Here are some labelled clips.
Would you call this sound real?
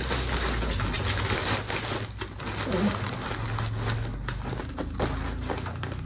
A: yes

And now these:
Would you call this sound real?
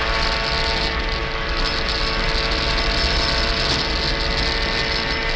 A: yes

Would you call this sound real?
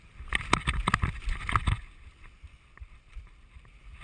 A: yes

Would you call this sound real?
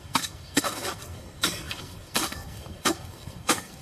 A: no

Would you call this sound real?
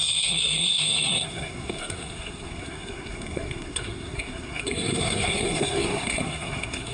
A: no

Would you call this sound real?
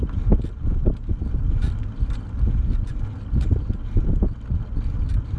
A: yes